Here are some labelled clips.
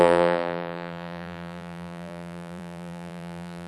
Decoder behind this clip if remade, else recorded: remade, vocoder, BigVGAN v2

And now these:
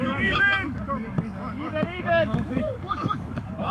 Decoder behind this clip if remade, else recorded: remade, codec, DAC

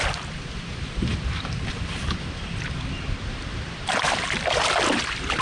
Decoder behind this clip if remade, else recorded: remade, vocoder, BigVGAN v2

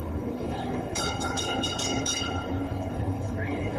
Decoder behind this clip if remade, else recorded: remade, codec, HILCodec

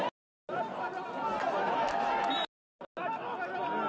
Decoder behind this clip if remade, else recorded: recorded